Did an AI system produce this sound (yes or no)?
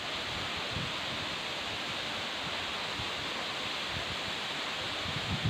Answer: no